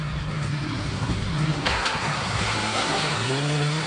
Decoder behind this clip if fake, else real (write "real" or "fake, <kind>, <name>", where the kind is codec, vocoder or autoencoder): fake, codec, SNAC